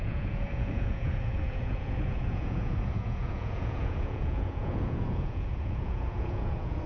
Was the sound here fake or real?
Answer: fake